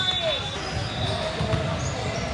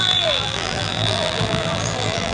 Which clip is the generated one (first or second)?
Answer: second